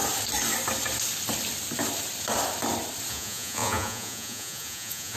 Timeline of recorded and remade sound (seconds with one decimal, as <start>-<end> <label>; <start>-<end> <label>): 0.0-3.1 recorded; 3.1-5.2 remade